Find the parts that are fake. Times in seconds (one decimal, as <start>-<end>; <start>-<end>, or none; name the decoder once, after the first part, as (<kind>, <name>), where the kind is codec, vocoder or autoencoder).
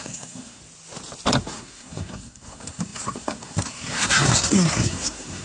0.0-0.6 (codec, SNAC); 1.4-5.4